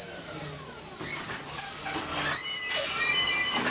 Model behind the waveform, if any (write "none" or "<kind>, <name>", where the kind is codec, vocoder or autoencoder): none